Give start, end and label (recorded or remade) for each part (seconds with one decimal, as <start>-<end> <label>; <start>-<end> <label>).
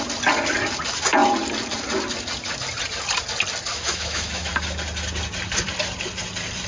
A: 0.0-3.7 recorded; 3.7-4.5 remade; 4.5-6.7 recorded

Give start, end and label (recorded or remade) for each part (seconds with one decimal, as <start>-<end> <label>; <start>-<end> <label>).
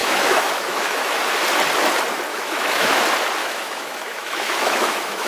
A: 0.0-1.2 remade; 1.2-2.3 recorded; 2.3-3.0 remade; 3.0-3.4 recorded; 3.4-5.3 remade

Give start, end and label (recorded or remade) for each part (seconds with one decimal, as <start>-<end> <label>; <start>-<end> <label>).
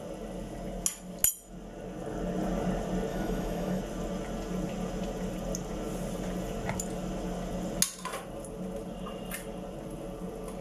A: 0.0-3.1 recorded; 3.1-3.8 remade; 3.8-10.6 recorded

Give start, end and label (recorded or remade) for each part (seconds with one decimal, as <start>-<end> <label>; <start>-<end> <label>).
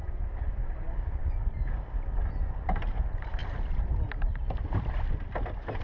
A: 0.0-5.8 recorded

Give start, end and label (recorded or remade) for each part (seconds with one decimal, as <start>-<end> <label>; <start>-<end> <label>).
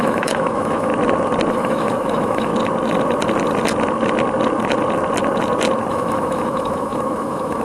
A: 0.0-0.9 remade; 0.9-1.5 recorded; 1.5-2.5 remade; 2.5-5.9 recorded; 5.9-7.6 remade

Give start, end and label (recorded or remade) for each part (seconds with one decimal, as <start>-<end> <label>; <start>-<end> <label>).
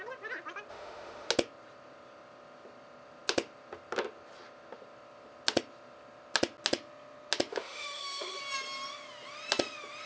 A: 0.0-0.7 recorded; 0.7-1.3 remade; 1.3-7.5 recorded; 7.5-8.4 remade; 8.4-10.1 recorded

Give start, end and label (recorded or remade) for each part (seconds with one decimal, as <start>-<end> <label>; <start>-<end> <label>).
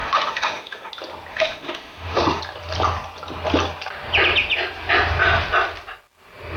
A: 0.0-0.9 remade; 0.9-1.3 recorded; 1.3-2.4 remade; 2.4-6.6 recorded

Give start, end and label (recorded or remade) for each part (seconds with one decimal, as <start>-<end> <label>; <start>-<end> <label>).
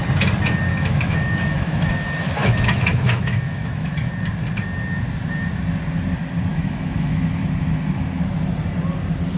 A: 0.0-0.7 recorded; 0.7-4.1 remade; 4.1-6.5 recorded; 6.5-7.4 remade; 7.4-9.4 recorded